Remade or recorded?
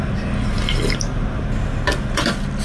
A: recorded